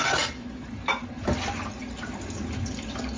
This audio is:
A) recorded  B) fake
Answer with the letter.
B